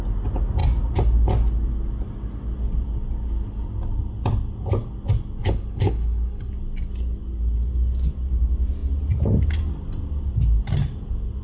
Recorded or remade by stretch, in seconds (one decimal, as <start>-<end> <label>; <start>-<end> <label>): 0.0-5.4 recorded; 5.4-6.5 remade; 6.5-11.4 recorded